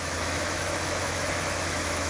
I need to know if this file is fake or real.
fake